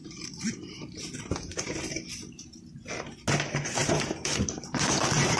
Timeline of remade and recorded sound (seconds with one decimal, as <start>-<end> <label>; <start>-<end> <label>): 0.0-1.7 remade; 1.7-3.8 recorded; 3.8-5.4 remade